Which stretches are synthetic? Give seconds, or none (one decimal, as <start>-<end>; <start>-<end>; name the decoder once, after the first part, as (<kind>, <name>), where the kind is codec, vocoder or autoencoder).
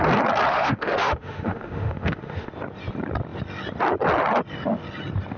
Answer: 0.5-2.5 (autoencoder, DAC-VAE)